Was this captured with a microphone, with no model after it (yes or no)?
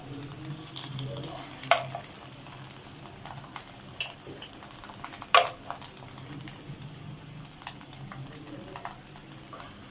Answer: yes